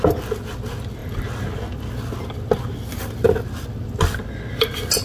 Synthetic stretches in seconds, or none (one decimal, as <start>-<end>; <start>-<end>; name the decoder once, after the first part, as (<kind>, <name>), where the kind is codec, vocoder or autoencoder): none